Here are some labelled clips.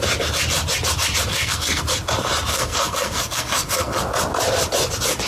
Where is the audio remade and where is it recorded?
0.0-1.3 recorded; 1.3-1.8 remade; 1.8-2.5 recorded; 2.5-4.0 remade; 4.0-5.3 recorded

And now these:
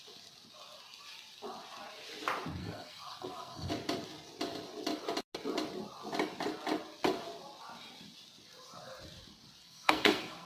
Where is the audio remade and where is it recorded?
0.0-2.6 recorded; 2.6-3.7 remade; 3.7-9.6 recorded; 9.6-10.5 remade